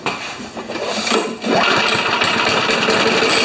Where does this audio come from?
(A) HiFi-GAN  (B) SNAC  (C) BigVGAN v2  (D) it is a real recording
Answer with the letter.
D